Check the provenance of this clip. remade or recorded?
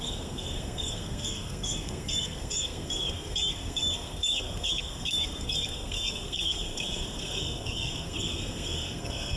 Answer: remade